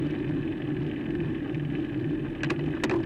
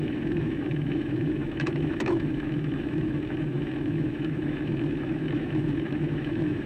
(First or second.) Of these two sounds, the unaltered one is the first